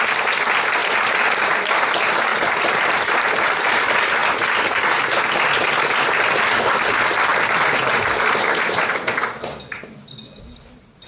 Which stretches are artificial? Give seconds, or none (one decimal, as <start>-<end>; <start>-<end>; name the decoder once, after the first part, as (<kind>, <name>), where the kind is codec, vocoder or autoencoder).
0.8-1.4 (vocoder, BigVGAN v2); 2.3-3.7